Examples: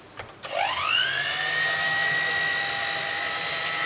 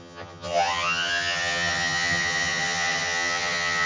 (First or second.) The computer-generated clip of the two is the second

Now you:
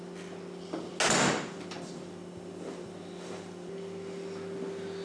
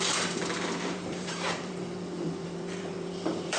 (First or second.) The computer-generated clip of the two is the second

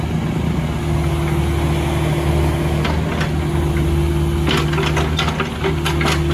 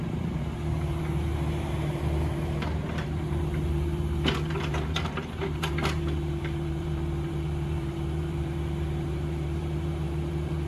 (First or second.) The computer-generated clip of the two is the second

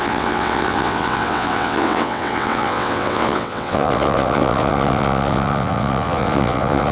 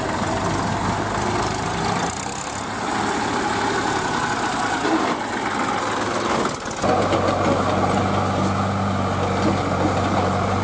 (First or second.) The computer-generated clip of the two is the first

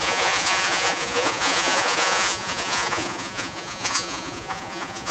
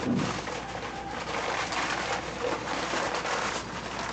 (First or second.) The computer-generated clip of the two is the first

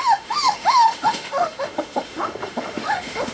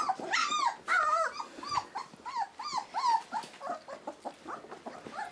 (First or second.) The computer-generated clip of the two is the first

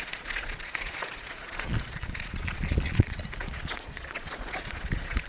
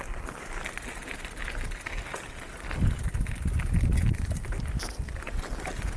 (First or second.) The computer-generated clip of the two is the first